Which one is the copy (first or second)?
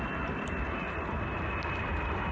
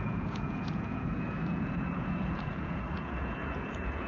second